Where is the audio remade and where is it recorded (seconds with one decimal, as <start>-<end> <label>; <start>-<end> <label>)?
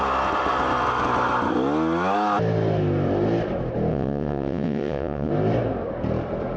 0.0-3.9 recorded; 3.9-5.3 remade; 5.3-6.6 recorded